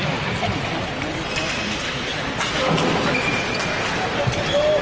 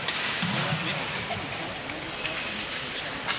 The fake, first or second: second